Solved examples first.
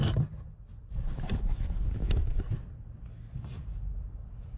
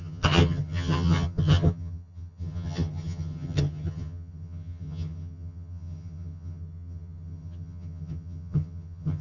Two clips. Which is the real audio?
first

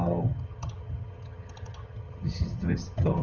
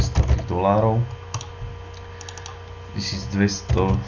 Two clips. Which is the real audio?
second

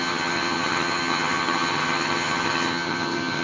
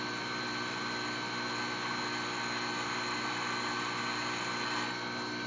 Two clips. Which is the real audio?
second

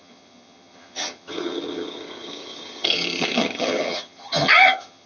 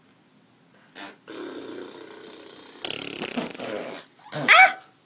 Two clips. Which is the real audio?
second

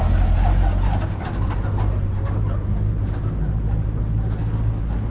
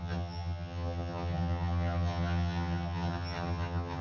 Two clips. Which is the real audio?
first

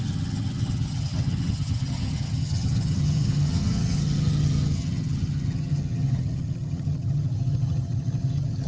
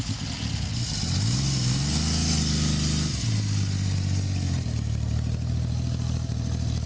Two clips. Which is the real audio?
second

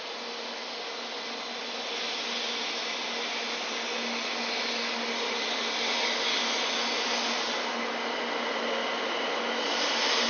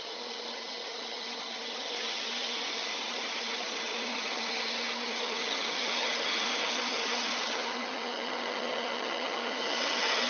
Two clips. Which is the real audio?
first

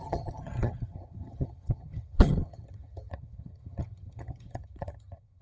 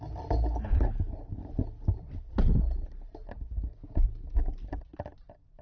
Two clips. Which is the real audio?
second